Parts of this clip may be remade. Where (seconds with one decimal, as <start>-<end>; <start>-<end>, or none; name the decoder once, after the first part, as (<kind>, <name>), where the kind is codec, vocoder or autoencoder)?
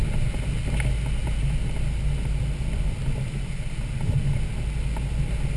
none